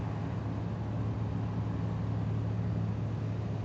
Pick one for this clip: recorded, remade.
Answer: recorded